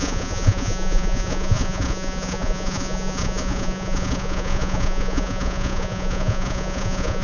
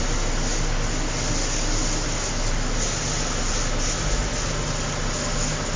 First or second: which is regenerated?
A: first